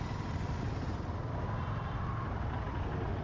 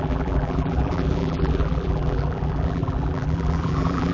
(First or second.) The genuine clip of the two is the first